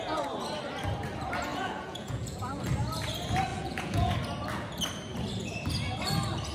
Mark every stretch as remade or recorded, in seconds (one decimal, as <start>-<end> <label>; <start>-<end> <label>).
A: 0.0-1.5 recorded; 1.5-2.6 remade; 2.6-3.5 recorded; 3.5-4.1 remade; 4.1-6.5 recorded

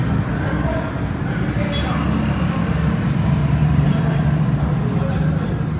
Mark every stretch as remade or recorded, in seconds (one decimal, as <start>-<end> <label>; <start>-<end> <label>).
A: 0.0-5.8 recorded

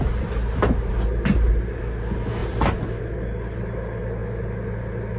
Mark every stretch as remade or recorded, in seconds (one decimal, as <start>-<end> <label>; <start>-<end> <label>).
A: 0.0-5.2 recorded

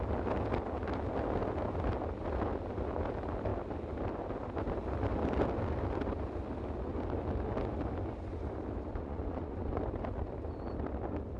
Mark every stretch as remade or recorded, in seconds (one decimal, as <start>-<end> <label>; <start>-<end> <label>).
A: 0.0-8.9 recorded; 8.9-9.8 remade; 9.8-11.4 recorded

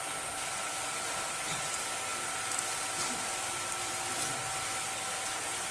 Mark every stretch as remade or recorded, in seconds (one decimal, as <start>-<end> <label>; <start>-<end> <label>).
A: 0.0-5.7 recorded

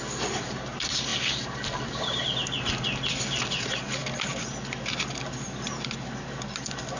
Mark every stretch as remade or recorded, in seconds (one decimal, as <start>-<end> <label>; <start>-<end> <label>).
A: 0.0-7.0 recorded

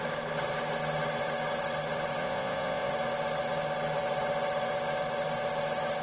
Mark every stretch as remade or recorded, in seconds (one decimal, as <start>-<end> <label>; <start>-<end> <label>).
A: 0.0-2.2 recorded; 2.2-2.9 remade; 2.9-6.0 recorded

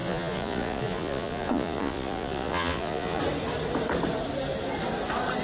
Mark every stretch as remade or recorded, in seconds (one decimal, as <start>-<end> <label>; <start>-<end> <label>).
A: 0.0-3.2 remade; 3.2-5.4 recorded